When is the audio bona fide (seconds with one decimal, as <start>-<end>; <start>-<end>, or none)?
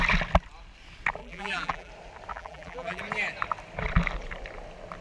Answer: 0.0-1.2; 1.9-2.3; 3.0-5.0